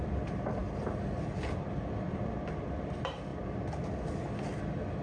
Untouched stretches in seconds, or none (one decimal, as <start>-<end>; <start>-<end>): 0.0-5.0